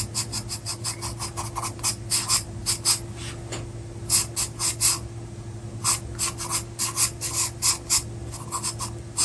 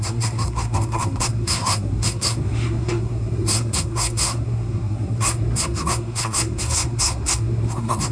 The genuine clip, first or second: first